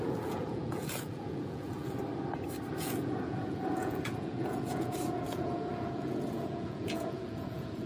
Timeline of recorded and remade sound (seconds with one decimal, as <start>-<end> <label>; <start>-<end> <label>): 0.0-2.0 remade; 2.0-2.7 recorded; 2.7-7.9 remade

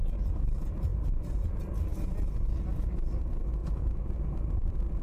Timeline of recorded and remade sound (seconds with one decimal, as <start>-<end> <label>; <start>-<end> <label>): 0.0-0.9 recorded; 0.9-1.5 remade; 1.5-3.6 recorded; 3.6-4.1 remade; 4.1-5.0 recorded

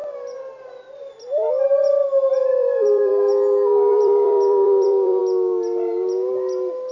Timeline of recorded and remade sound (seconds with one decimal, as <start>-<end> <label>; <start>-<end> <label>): 0.0-2.6 recorded; 2.6-3.1 remade; 3.1-3.9 recorded; 3.9-5.2 remade; 5.2-6.9 recorded